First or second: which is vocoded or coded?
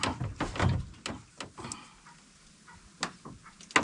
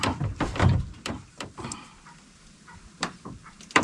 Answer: second